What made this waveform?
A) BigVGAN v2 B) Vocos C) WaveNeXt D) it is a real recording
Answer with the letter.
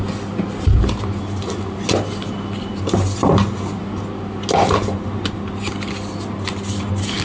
D